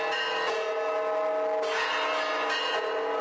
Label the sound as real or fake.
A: real